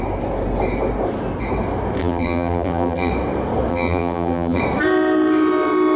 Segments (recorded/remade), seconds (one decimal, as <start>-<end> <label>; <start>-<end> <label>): 0.0-2.0 recorded; 2.0-3.1 remade; 3.1-3.7 recorded; 3.7-4.6 remade; 4.6-6.0 recorded